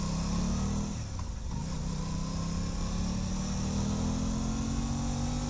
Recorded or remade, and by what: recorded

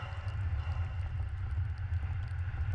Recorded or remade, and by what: recorded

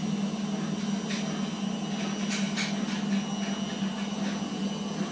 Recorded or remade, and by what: recorded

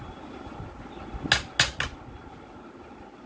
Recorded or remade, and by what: recorded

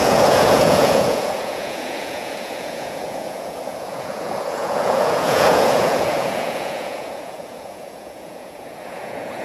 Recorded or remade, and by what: remade, vocoder, Vocos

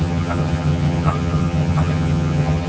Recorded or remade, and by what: remade, vocoder, HiFi-GAN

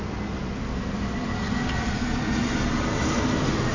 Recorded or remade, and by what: recorded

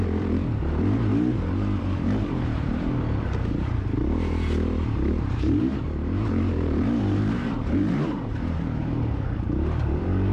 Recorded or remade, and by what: remade, vocoder, BigVGAN v2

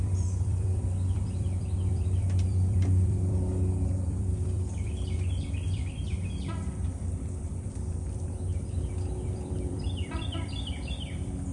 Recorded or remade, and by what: remade, vocoder, BigVGAN v2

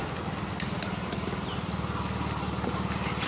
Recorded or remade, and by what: recorded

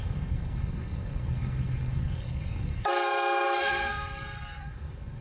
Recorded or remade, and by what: remade, codec, SNAC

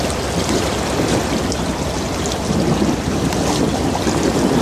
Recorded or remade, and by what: recorded